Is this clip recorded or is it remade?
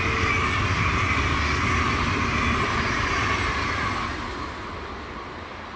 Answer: recorded